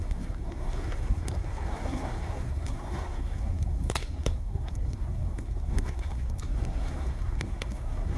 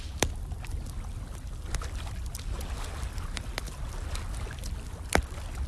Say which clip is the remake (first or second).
first